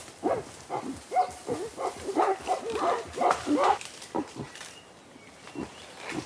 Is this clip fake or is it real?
fake